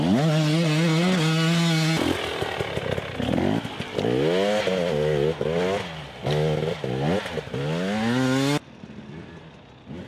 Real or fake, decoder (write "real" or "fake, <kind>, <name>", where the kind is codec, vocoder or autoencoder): real